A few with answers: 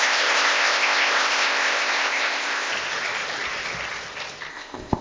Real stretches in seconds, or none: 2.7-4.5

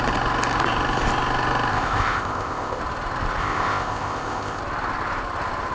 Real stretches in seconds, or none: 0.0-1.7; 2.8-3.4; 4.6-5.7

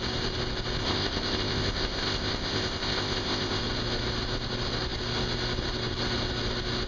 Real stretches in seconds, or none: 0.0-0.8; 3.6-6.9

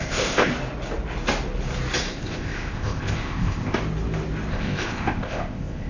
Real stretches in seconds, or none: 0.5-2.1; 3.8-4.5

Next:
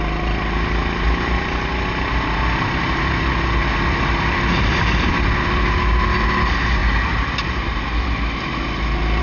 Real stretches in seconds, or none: 0.0-9.2

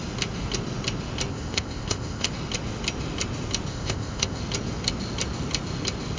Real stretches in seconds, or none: 0.0-1.3; 2.3-3.7; 4.4-6.2